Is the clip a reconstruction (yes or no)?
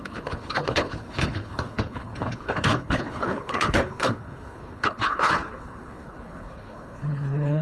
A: yes